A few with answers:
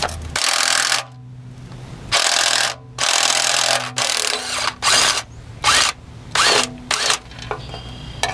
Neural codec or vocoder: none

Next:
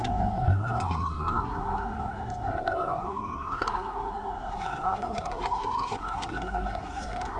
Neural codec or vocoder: codec, SNAC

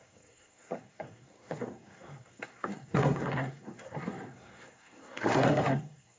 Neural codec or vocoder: codec, SNAC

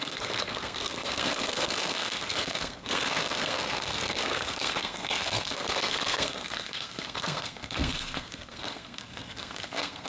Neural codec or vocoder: codec, SNAC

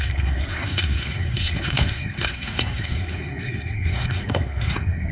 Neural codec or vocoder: codec, SNAC